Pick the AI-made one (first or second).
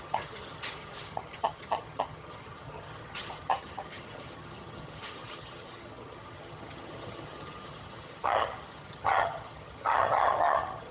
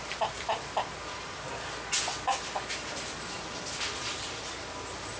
first